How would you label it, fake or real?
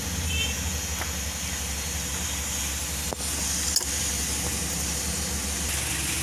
real